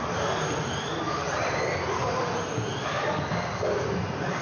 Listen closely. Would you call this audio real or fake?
real